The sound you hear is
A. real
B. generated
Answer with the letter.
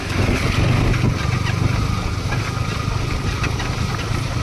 A